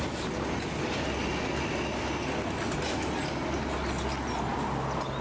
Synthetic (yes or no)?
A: no